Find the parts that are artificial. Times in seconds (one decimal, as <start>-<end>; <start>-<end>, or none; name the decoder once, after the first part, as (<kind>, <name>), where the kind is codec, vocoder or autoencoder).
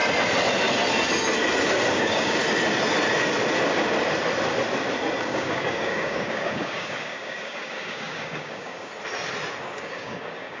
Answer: 1.9-2.4 (codec, DAC); 5.2-8.9; 9.6-10.6